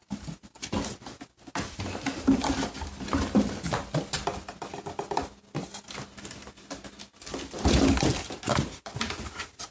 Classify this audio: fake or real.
real